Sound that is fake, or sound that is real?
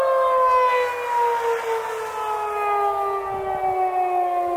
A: real